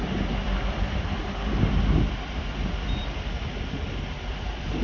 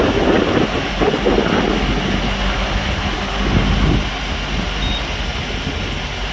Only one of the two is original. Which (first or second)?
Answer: second